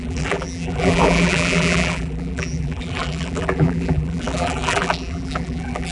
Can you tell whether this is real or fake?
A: fake